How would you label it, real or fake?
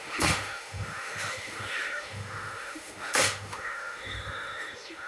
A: fake